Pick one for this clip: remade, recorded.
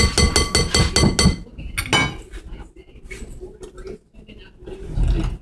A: recorded